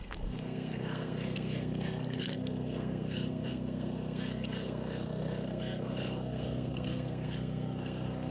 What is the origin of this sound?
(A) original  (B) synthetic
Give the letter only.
B